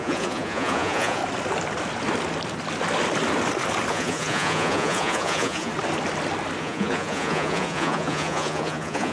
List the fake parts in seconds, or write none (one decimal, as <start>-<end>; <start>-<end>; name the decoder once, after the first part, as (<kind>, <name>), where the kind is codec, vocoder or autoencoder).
0.0-1.2 (vocoder, Vocos); 3.9-5.7; 6.6-9.1